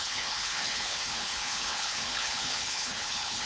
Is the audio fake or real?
fake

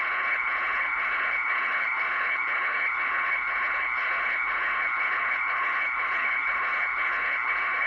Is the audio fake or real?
fake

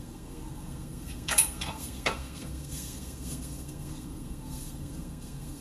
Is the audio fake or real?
fake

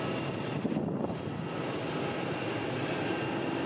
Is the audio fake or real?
real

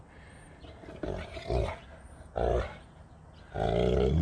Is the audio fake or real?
real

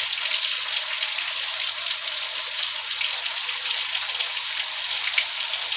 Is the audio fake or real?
real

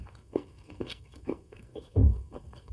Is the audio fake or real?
fake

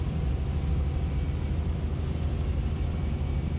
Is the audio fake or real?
real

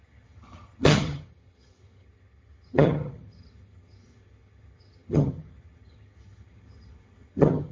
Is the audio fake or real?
fake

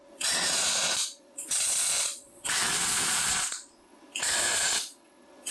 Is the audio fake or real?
fake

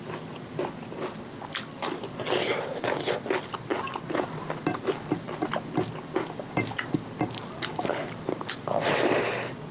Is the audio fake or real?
real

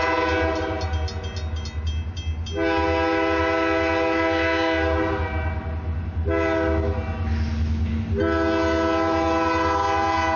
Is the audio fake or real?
real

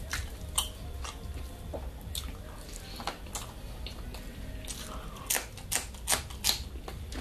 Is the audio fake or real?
real